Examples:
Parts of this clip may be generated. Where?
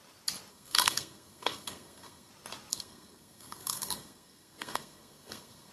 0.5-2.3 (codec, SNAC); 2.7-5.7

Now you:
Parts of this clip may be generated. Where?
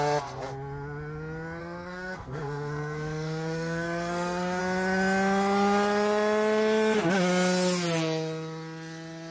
1.6-4.6 (codec, SNAC)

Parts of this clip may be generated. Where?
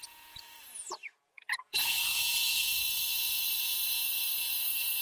0.0-5.0 (vocoder, Vocos)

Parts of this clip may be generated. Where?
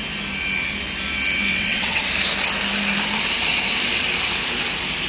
1.5-2.0 (vocoder, WaveNeXt)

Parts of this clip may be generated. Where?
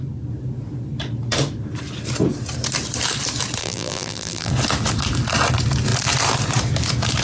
3.6-4.5 (vocoder, BigVGAN v2)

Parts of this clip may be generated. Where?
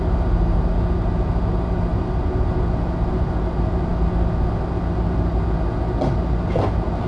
none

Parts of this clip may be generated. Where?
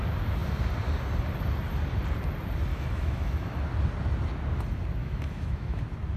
2.7-3.6 (autoencoder, DAC-VAE); 5.0-5.8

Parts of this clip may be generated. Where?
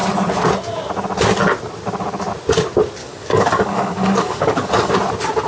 3.0-4.9 (codec, DAC)